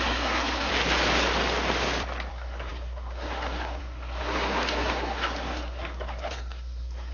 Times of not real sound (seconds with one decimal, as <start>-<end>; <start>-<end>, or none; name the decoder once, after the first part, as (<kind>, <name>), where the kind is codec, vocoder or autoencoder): 0.0-0.7 (codec, SNAC); 2.3-7.1